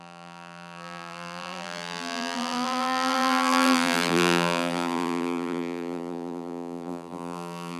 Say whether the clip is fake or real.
fake